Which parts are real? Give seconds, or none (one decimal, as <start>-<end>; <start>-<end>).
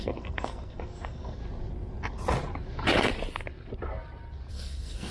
1.4-4.5